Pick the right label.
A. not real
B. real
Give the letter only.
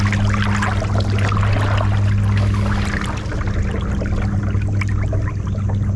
B